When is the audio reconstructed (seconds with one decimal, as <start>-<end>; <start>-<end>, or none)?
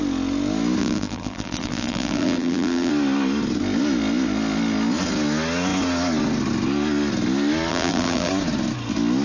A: 0.8-2.9; 7.7-8.3